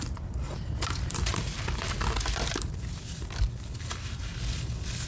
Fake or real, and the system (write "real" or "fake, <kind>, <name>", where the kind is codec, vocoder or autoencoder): real